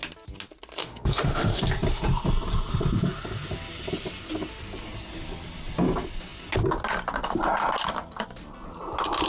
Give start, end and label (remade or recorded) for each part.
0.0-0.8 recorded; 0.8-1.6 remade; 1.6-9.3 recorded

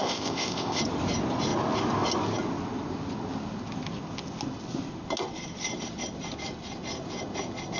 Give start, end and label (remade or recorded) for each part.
0.0-0.8 remade; 0.8-7.8 recorded

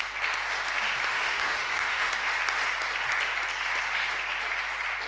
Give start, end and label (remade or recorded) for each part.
0.0-1.1 recorded; 1.1-2.1 remade; 2.1-5.1 recorded

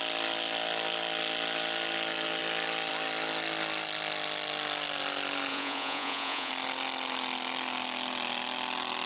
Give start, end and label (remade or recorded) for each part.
0.0-5.5 recorded; 5.5-6.5 remade; 6.5-9.1 recorded

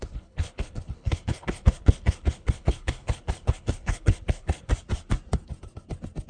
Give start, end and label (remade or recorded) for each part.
0.0-4.7 remade; 4.7-6.3 recorded

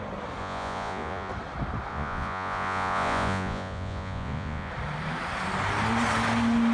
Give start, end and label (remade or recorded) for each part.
0.0-0.4 recorded; 0.4-1.3 remade; 1.3-1.9 recorded; 1.9-4.7 remade; 4.7-6.7 recorded